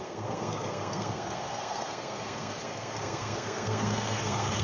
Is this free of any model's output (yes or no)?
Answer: no